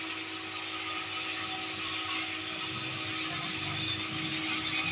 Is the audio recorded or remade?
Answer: recorded